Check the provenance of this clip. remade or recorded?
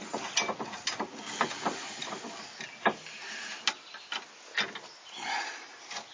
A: recorded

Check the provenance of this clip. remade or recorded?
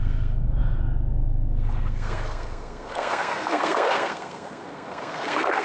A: remade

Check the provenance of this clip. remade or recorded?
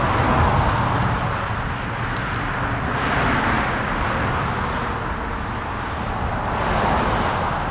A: recorded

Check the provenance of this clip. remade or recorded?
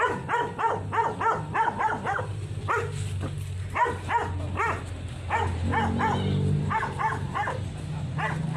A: recorded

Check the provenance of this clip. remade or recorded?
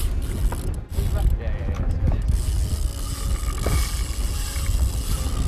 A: recorded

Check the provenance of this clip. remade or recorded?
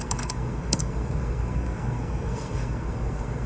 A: remade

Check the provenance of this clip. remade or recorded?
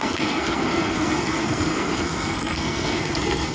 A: remade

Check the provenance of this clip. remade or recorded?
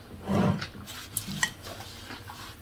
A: recorded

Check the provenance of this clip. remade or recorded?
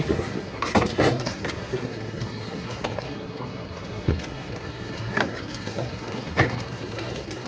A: remade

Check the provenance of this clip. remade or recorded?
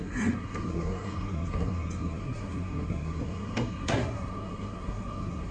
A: remade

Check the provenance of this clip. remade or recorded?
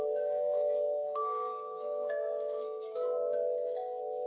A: remade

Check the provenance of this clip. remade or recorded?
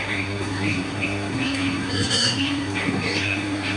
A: remade